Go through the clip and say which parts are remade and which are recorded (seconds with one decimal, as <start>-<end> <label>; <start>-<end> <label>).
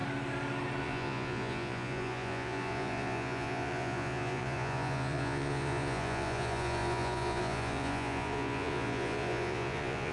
0.0-0.8 recorded; 0.8-10.1 remade